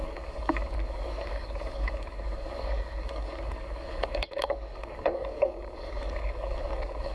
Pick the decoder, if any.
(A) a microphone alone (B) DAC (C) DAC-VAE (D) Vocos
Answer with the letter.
B